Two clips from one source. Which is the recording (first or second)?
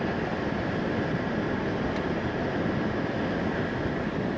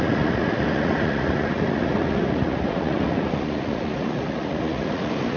first